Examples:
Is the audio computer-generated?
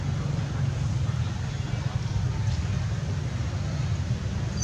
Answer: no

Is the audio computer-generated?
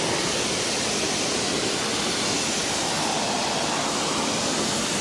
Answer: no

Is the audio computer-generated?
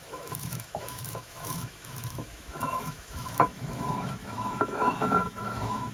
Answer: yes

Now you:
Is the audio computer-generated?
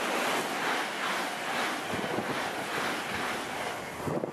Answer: no